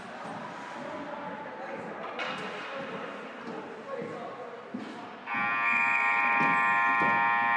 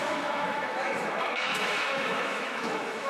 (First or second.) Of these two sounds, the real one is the first